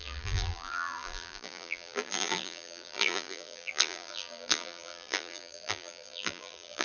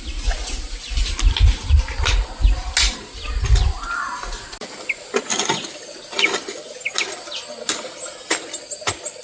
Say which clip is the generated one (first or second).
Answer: first